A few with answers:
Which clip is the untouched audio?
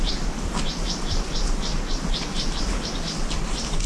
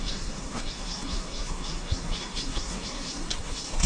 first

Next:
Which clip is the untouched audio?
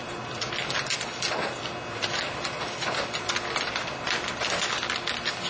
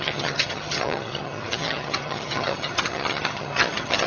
first